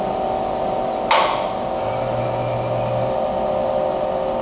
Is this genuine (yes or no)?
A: yes